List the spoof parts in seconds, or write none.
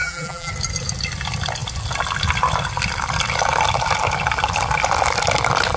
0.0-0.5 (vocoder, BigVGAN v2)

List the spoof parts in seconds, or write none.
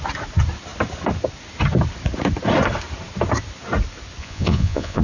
4.2-5.0 (vocoder, Vocos)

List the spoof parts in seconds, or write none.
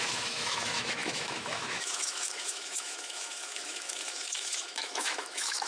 0.0-5.7 (autoencoder, DAC-VAE)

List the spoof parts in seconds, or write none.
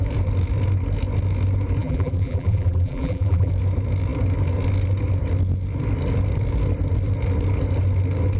1.8-3.5 (vocoder, BigVGAN v2)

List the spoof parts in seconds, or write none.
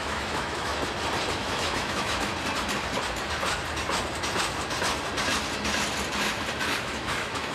0.0-0.7 (autoencoder, DAC-VAE); 1.3-2.3; 6.8-7.5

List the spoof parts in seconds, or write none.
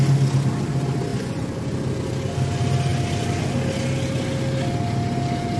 1.1-1.6 (vocoder, Vocos)